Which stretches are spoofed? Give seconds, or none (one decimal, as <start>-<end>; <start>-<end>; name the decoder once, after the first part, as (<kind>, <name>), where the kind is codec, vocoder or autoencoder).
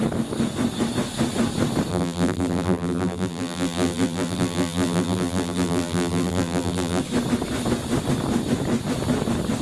1.9-7.0 (vocoder, BigVGAN v2)